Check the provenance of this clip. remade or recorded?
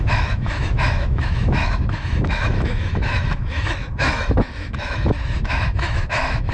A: remade